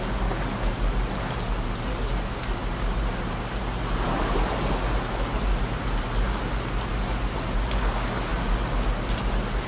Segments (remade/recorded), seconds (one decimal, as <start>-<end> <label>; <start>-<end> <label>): 0.0-9.7 recorded